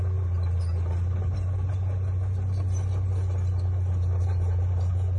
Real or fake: real